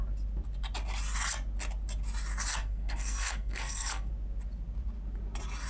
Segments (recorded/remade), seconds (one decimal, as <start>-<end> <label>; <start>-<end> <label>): 0.0-2.5 recorded; 2.5-4.1 remade; 4.1-5.7 recorded